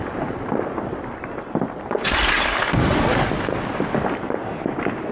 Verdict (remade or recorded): remade